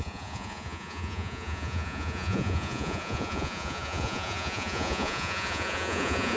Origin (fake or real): fake